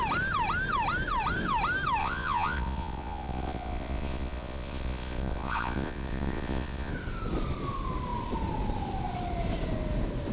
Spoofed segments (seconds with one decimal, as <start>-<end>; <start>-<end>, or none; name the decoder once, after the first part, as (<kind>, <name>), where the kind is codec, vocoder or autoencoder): 2.0-6.9 (vocoder, Vocos)